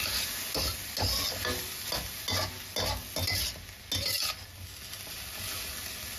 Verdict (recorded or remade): recorded